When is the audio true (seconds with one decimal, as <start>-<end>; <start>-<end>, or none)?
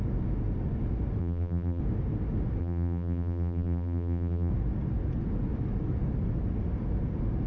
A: 0.0-1.2; 1.8-2.6; 4.5-7.5